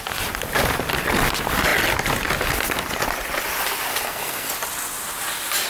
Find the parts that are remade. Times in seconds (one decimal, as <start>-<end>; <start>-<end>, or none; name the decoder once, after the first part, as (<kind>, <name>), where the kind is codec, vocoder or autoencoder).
3.9-4.5 (codec, SNAC)